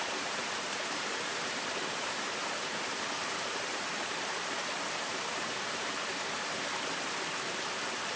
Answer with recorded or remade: remade